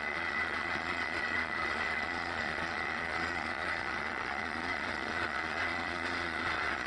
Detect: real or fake fake